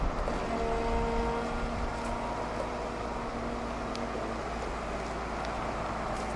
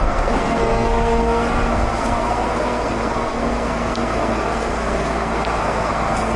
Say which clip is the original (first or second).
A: first